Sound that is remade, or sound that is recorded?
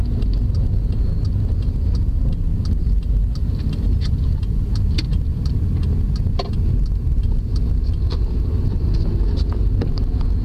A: recorded